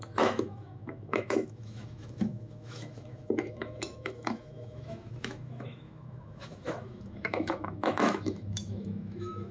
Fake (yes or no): yes